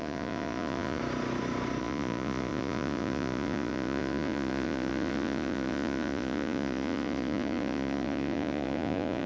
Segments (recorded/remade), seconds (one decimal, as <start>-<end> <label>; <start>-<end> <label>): 0.0-1.0 remade; 1.0-1.8 recorded; 1.8-9.3 remade